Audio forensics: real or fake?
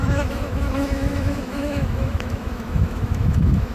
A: fake